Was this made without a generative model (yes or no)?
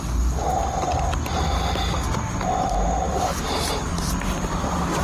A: yes